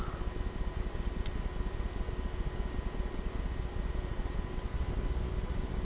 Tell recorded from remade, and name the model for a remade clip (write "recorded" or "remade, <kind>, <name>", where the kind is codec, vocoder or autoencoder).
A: recorded